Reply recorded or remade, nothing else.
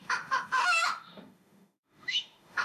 remade